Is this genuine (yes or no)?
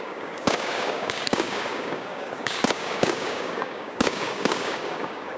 no